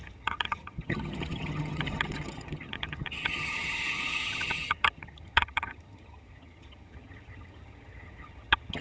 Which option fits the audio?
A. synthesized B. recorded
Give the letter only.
A